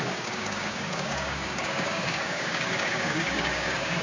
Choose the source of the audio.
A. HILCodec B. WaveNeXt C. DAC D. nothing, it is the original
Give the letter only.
C